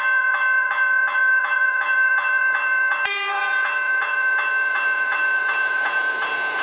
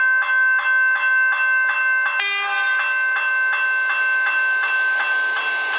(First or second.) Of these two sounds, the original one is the second